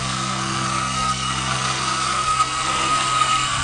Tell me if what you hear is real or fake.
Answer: fake